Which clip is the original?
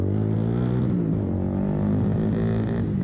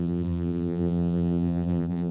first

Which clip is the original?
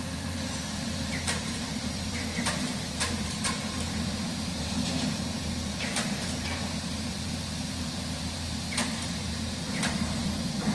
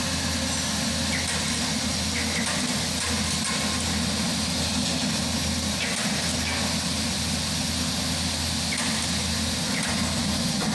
second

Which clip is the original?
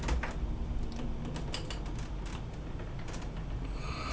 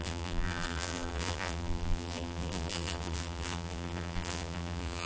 first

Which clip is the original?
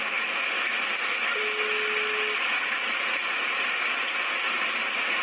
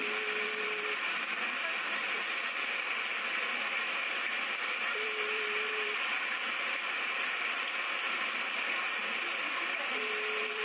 first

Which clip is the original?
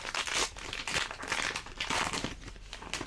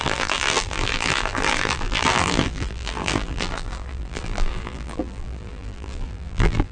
first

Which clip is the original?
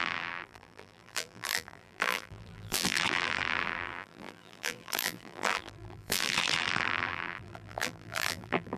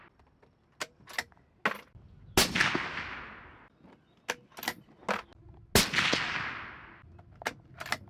second